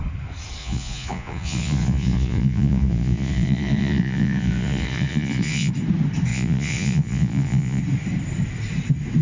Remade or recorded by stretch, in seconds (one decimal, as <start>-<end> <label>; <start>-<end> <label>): 0.0-0.6 recorded; 0.6-5.7 remade; 5.7-6.3 recorded; 6.3-7.8 remade; 7.8-9.2 recorded